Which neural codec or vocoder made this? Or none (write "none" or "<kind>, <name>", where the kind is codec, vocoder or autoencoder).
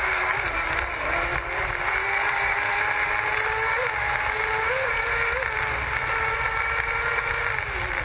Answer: none